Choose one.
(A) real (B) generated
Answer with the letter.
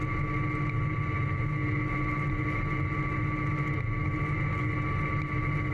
A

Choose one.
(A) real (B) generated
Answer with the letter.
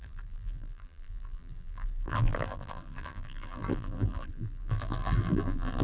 B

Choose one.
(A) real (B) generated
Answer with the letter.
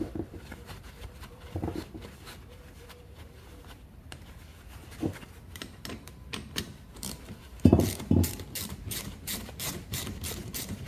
B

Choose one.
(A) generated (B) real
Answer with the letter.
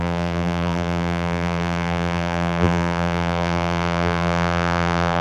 A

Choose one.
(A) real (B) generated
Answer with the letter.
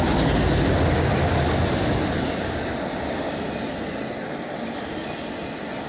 A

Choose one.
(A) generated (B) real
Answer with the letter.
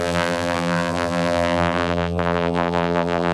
A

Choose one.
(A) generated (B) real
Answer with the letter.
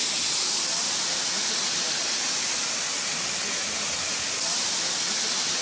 B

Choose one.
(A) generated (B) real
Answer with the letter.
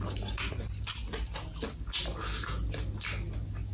B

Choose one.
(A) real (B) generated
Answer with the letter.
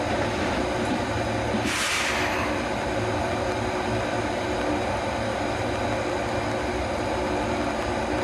A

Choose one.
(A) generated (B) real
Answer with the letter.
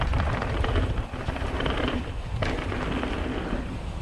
A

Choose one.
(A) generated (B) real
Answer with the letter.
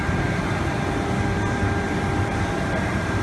A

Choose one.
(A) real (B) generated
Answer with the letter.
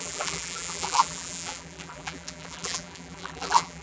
B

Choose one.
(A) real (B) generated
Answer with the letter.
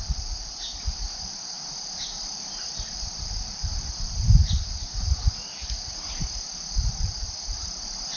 B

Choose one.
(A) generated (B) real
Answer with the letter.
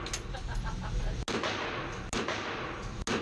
B